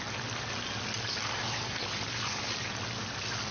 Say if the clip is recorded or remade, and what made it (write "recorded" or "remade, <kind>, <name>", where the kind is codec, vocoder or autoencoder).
recorded